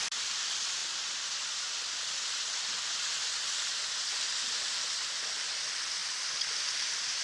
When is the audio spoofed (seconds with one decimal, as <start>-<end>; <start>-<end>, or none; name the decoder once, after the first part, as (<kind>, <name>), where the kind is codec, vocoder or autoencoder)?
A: none

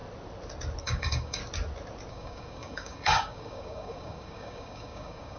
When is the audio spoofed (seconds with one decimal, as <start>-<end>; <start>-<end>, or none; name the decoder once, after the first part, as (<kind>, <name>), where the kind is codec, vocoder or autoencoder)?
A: 0.8-1.4 (codec, DAC); 2.1-5.4

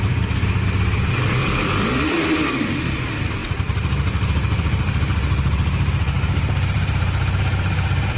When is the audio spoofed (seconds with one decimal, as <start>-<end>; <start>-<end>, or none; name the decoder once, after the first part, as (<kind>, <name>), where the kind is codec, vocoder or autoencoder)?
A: 1.4-2.5 (vocoder, BigVGAN v2); 3.4-8.2

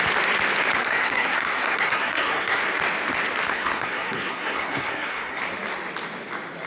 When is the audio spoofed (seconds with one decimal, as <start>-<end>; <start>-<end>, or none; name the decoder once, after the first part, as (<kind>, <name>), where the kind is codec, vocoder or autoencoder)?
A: 0.8-2.6 (codec, SNAC); 3.5-5.4

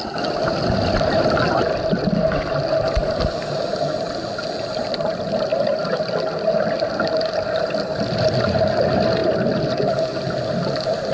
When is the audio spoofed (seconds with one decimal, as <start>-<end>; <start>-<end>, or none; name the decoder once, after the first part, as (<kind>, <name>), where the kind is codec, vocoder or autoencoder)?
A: 0.0-1.4 (vocoder, BigVGAN v2); 5.5-7.6

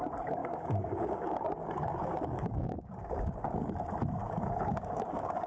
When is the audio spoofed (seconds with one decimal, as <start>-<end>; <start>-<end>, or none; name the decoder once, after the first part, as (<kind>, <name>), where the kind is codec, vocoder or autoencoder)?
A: 0.4-3.7 (codec, DAC); 4.2-5.5

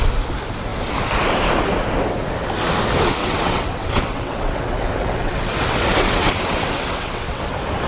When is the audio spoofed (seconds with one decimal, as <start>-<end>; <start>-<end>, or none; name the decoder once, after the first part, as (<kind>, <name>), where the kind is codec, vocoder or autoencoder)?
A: 3.2-5.5 (vocoder, WaveNeXt); 5.9-7.4

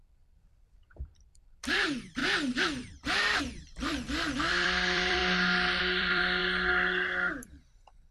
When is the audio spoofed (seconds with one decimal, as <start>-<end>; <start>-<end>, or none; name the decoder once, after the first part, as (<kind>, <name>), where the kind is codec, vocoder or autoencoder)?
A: 0.0-2.2 (vocoder, BigVGAN v2); 3.4-5.2; 5.8-6.4; 7.5-8.1